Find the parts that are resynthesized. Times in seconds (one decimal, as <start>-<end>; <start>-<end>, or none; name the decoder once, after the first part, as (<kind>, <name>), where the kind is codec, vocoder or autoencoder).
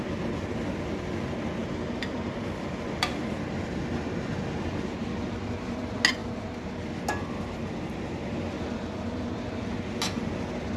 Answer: 1.6-3.8 (vocoder, BigVGAN v2)